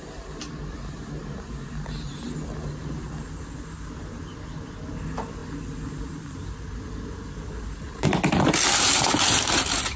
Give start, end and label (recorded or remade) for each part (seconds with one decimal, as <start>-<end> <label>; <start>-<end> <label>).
0.0-10.0 recorded